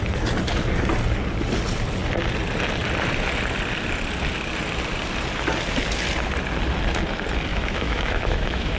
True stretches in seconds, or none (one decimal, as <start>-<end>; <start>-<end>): 0.0-7.5